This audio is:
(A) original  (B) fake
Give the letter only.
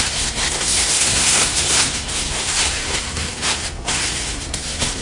B